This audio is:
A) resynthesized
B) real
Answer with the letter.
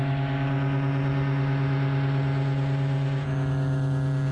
B